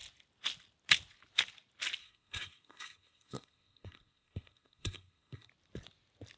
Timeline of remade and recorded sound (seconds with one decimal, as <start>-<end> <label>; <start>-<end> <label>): 0.0-2.0 recorded; 2.0-5.5 remade; 5.5-6.4 recorded